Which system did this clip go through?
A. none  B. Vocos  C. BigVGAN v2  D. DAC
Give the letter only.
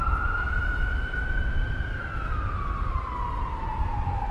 A